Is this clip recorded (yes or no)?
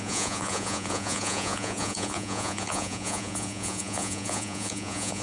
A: no